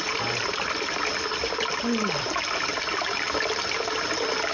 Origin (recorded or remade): recorded